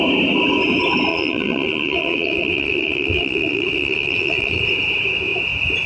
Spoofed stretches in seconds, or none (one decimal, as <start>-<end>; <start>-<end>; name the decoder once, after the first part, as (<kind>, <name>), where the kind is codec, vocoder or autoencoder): 1.1-4.6 (vocoder, WaveNeXt)